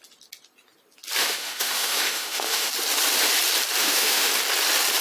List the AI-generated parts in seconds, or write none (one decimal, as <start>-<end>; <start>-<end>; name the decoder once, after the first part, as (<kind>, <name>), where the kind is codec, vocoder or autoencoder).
1.2-2.7 (autoencoder, DAC-VAE); 3.8-4.3